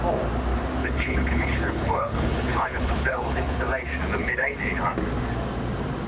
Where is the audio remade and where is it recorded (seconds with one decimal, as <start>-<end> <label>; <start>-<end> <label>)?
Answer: 0.0-0.8 recorded; 0.8-3.6 remade; 3.6-4.2 recorded; 4.2-4.8 remade; 4.8-6.1 recorded